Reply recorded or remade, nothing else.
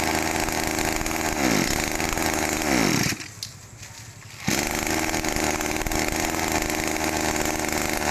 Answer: recorded